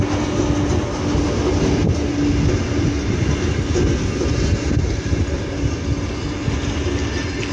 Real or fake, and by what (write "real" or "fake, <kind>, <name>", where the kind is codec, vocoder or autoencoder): real